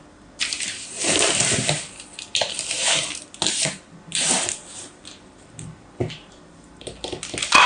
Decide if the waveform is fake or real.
real